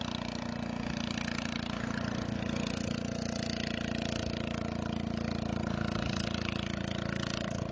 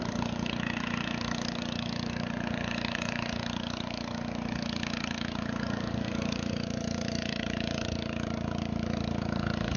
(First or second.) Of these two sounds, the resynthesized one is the second